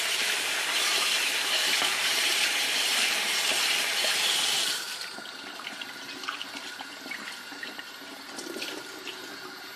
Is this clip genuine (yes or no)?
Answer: no